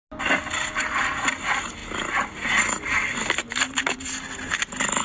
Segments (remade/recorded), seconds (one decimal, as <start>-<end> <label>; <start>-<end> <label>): 0.0-5.0 recorded